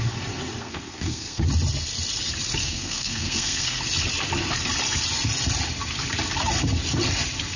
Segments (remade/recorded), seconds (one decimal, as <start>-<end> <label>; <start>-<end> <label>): 0.0-0.6 recorded; 0.6-1.4 remade; 1.4-2.6 recorded; 2.6-3.8 remade; 3.8-7.6 recorded